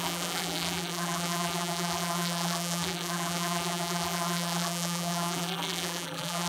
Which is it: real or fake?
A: fake